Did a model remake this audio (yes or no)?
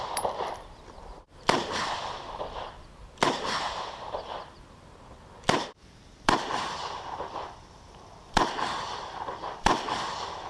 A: yes